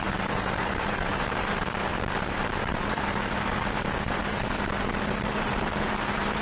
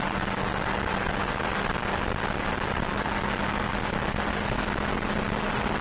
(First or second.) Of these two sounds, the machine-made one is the first